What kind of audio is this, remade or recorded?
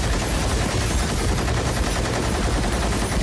recorded